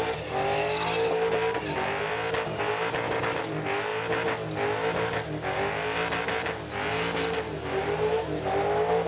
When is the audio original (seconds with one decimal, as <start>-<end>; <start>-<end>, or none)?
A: 0.0-9.1